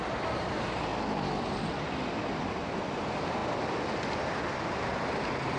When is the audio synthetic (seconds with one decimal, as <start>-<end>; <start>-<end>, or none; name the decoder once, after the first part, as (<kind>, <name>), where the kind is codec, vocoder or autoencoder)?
0.0-0.9 (vocoder, BigVGAN v2); 2.4-3.4